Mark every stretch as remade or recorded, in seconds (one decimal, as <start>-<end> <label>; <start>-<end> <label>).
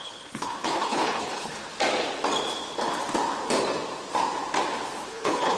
0.0-1.7 remade; 1.7-5.1 recorded; 5.1-5.6 remade